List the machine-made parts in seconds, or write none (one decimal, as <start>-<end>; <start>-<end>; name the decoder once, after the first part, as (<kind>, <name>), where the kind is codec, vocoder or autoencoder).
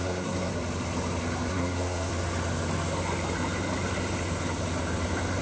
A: 0.0-0.5 (codec, SNAC); 1.5-2.1